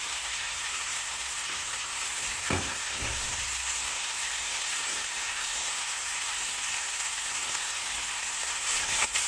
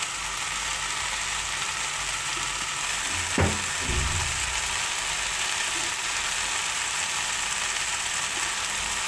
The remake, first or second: first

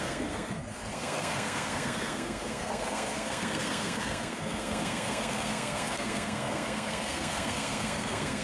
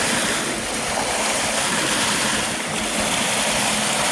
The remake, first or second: first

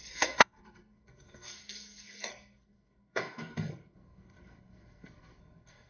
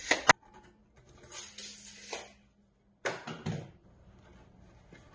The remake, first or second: first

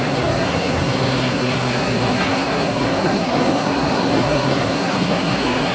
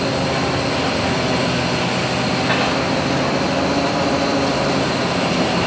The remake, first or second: first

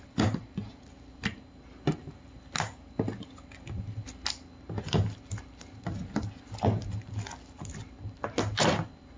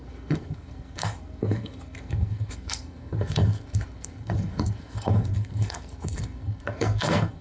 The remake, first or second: second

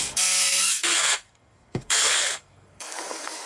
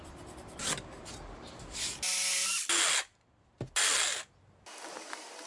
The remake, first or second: first